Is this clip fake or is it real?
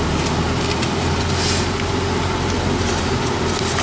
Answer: real